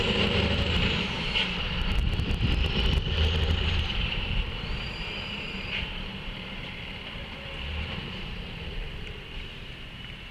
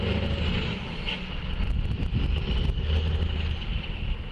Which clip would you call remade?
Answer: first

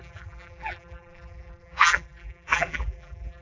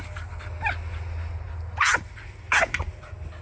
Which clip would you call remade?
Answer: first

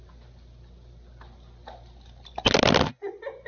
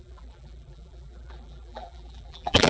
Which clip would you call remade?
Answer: second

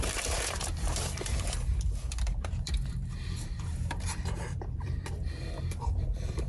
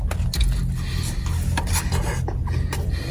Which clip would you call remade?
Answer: first